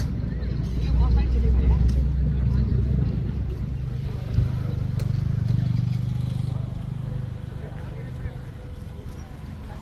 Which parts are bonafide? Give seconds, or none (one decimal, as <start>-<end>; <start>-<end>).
0.0-2.7; 4.5-9.8